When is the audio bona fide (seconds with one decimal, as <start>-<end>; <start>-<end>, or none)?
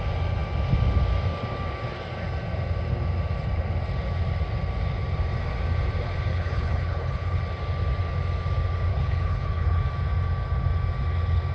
0.0-6.3; 7.4-8.9; 9.8-11.5